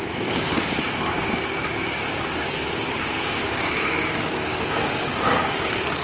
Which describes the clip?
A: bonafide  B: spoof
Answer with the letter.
B